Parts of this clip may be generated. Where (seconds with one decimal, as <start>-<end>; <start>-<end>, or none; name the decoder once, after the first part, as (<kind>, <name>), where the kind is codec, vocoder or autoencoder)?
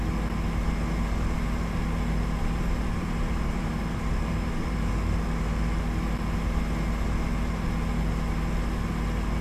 2.4-4.9 (vocoder, BigVGAN v2)